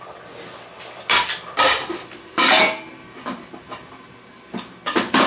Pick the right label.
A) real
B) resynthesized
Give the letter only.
A